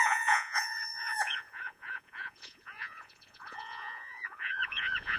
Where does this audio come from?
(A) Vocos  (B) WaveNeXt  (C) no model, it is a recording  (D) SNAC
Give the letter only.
A